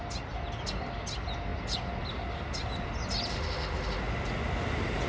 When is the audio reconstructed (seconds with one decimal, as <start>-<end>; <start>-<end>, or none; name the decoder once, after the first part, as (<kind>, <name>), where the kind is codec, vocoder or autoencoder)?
3.3-4.0 (autoencoder, DAC-VAE)